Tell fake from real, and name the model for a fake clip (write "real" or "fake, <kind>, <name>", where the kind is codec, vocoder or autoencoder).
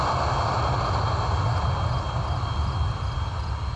real